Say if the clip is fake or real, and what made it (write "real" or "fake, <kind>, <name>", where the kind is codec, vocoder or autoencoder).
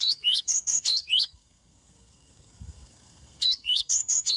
fake, codec, SNAC